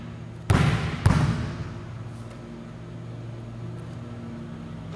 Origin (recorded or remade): recorded